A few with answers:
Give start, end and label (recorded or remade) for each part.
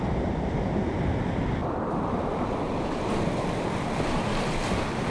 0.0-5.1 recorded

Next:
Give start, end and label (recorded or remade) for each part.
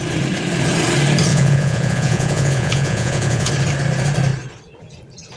0.0-1.3 recorded; 1.3-3.5 remade; 3.5-5.4 recorded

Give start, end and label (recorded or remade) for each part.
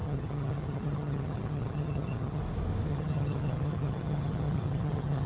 0.0-2.4 remade; 2.4-2.9 recorded; 2.9-5.3 remade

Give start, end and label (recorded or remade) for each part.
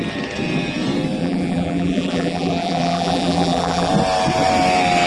0.0-1.2 recorded; 1.2-3.9 remade; 3.9-5.1 recorded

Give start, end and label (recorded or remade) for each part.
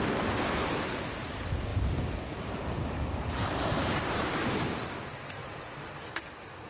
0.0-1.7 recorded; 1.7-4.5 remade; 4.5-6.7 recorded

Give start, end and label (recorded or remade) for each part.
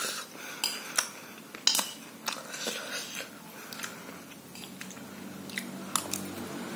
0.0-6.8 recorded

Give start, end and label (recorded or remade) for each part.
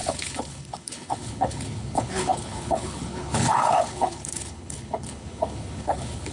0.0-6.3 remade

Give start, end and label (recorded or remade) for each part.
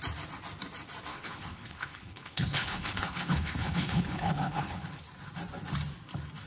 0.0-1.1 recorded; 1.1-5.0 remade; 5.0-6.5 recorded